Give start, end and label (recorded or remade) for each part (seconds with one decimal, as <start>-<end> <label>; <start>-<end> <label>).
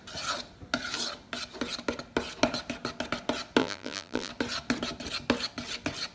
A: 0.0-3.6 recorded; 3.6-4.3 remade; 4.3-6.1 recorded